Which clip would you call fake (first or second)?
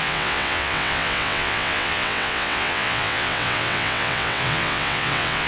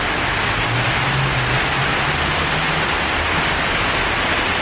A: first